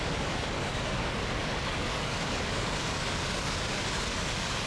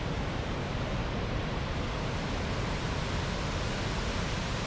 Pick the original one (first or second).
second